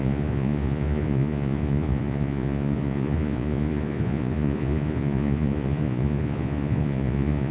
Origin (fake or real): fake